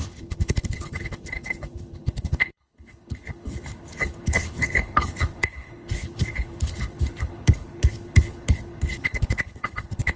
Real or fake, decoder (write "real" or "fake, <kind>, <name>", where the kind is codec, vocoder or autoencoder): fake, codec, HILCodec